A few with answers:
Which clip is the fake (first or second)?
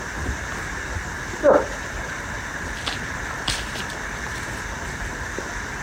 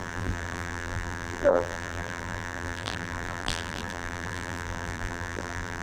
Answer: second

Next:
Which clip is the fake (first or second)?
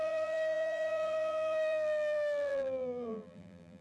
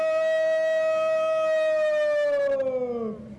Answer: first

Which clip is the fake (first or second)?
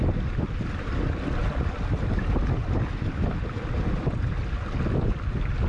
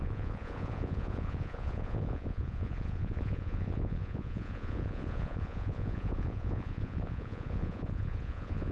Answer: second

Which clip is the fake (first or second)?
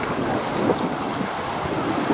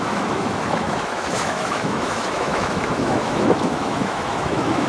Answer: second